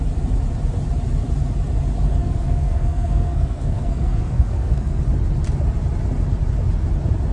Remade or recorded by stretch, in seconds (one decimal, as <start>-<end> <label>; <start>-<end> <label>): 0.0-2.2 recorded; 2.2-5.0 remade; 5.0-7.3 recorded